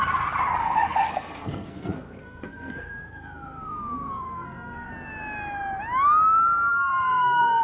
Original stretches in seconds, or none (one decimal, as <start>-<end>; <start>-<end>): 0.0-0.6; 4.9-6.7